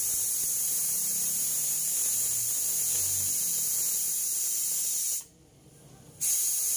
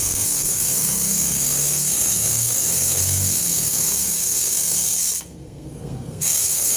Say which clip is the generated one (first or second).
second